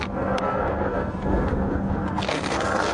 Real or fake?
fake